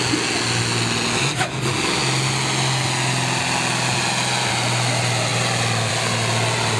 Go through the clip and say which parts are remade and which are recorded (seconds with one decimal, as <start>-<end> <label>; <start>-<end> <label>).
0.0-6.8 recorded

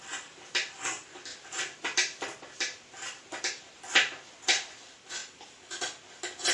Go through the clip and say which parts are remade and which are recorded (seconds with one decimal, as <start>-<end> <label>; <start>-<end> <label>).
0.0-6.5 recorded

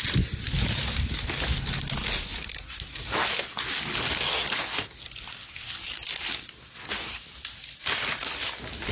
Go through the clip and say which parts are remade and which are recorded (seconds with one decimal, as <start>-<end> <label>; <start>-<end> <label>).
0.0-8.9 recorded

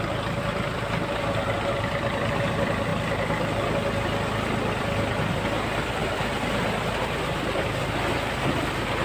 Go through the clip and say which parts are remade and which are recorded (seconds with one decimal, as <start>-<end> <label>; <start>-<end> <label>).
0.0-9.0 recorded

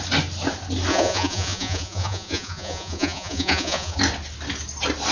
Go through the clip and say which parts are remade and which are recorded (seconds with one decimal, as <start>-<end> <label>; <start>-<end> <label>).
0.0-0.9 recorded; 0.9-4.0 remade; 4.0-5.1 recorded